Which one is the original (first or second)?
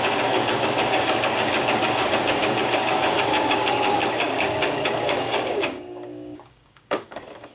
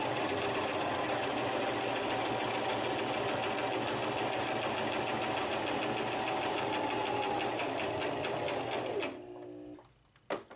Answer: second